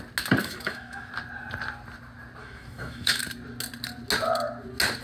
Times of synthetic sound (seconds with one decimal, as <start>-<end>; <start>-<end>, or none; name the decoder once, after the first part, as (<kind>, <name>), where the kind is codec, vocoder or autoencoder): 0.4-1.1 (autoencoder, DAC-VAE); 2.4-3.2